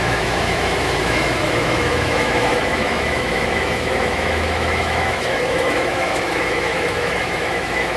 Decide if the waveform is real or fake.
fake